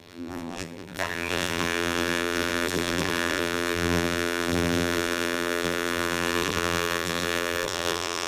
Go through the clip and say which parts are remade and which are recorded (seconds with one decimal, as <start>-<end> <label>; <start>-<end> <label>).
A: 0.0-8.3 remade